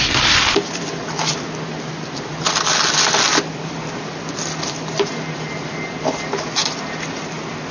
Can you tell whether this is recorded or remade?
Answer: recorded